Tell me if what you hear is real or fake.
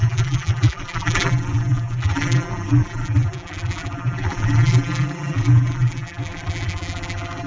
fake